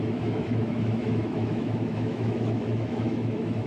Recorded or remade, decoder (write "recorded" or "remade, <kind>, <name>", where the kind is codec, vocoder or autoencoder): remade, autoencoder, DAC-VAE